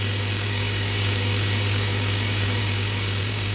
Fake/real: fake